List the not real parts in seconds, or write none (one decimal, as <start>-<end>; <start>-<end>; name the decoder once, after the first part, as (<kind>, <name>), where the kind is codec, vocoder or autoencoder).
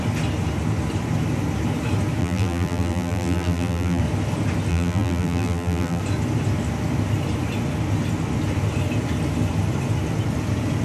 2.2-4.0 (vocoder, BigVGAN v2); 4.7-6.0